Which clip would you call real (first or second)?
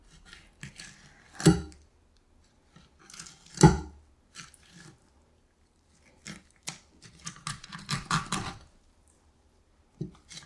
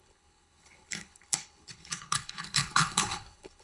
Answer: first